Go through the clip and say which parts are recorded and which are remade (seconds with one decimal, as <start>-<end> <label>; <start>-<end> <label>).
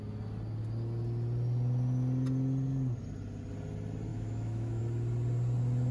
0.0-4.1 recorded; 4.1-4.8 remade; 4.8-5.9 recorded